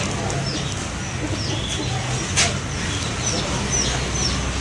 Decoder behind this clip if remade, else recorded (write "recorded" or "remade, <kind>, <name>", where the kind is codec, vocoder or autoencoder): recorded